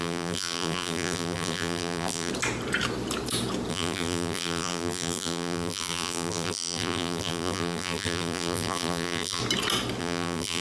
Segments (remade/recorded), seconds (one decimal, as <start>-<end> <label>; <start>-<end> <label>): 0.0-2.3 remade; 2.3-3.7 recorded; 3.7-9.4 remade; 9.4-10.0 recorded; 10.0-10.6 remade